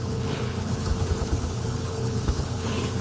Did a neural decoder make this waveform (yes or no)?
yes